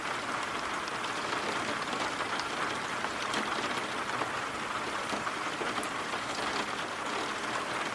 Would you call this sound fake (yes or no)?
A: no